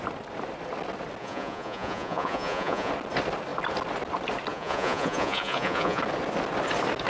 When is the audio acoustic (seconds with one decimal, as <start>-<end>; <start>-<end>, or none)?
0.0-1.2; 2.9-4.5; 6.0-7.1